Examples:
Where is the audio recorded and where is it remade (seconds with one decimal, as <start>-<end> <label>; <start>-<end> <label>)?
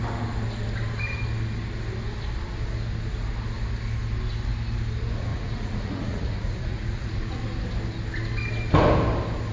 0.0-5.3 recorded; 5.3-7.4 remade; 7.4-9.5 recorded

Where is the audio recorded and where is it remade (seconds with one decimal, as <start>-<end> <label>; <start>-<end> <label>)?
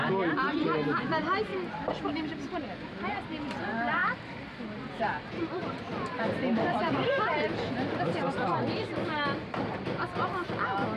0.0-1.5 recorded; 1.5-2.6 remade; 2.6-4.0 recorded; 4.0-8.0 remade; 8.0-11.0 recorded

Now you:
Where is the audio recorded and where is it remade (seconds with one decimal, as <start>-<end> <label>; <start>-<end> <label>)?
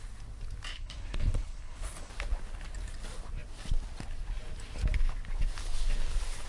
0.0-0.7 recorded; 0.7-2.1 remade; 2.1-6.5 recorded